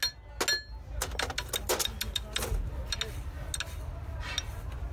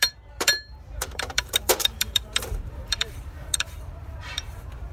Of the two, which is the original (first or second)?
first